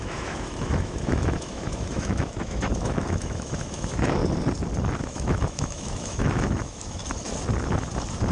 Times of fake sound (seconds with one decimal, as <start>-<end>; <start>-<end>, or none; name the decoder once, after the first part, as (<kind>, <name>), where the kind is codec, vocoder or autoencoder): 0.0-4.2 (autoencoder, DAC-VAE); 5.0-7.0

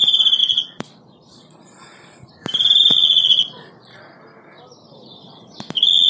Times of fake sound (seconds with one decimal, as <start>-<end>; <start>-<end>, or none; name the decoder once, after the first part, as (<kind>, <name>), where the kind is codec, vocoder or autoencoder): 0.4-2.3 (vocoder, Vocos); 2.9-4.0; 4.9-6.1

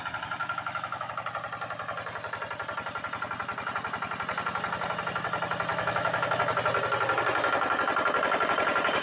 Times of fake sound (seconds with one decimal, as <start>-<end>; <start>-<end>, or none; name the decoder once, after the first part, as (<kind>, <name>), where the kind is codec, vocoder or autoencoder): 0.4-1.1 (autoencoder, DAC-VAE); 5.7-6.4

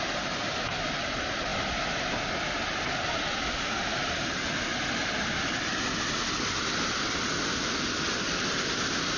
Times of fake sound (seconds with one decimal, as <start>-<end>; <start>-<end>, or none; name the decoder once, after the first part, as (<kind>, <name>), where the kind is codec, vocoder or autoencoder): none